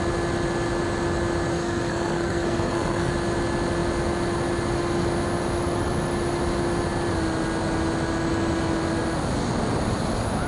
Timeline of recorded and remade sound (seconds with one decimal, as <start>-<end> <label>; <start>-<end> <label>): 0.0-1.5 recorded; 1.5-3.1 remade; 3.1-10.5 recorded